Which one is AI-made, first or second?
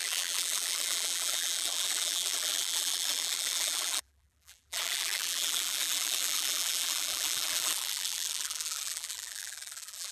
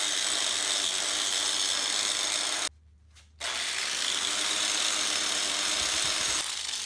first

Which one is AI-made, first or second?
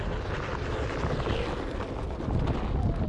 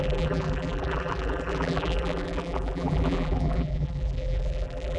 second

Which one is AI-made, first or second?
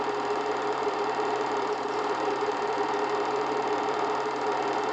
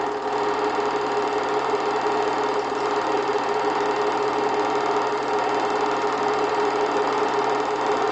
first